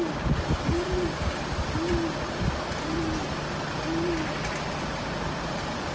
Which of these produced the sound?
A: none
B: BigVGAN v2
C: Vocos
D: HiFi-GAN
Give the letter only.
A